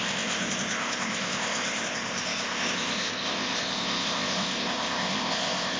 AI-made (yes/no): yes